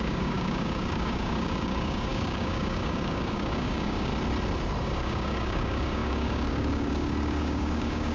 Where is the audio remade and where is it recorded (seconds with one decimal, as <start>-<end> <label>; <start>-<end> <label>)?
0.0-4.1 remade; 4.1-4.8 recorded; 4.8-8.1 remade